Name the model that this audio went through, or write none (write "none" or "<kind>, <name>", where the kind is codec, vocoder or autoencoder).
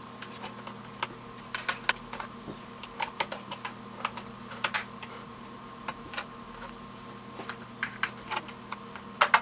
none